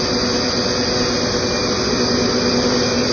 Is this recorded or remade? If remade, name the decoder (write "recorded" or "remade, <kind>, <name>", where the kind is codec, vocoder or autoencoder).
recorded